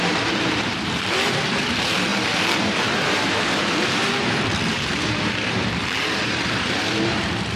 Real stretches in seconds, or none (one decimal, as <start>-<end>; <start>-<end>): none